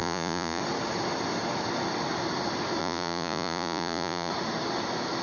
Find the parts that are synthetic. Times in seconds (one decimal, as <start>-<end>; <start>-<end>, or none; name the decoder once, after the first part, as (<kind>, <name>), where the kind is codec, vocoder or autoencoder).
0.0-0.6 (vocoder, Vocos); 2.8-4.3